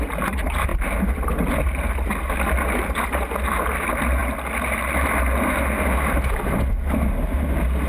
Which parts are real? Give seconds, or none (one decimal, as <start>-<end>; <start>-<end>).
0.0-7.9